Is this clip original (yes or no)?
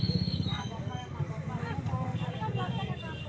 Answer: no